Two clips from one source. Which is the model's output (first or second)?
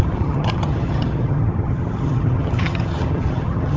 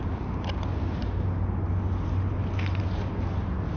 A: first